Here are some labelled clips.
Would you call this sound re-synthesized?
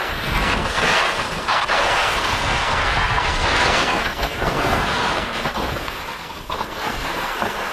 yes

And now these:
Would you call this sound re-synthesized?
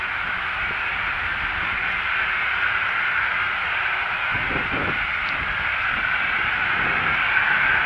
no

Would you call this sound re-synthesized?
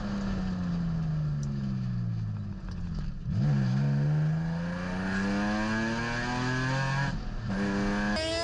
no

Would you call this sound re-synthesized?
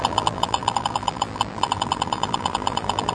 yes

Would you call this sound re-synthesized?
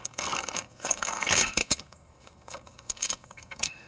yes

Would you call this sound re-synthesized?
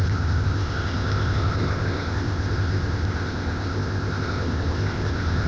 yes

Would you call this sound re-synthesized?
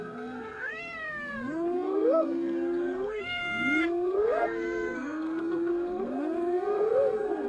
yes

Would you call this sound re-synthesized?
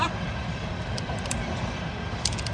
no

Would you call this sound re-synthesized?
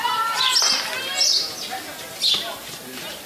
no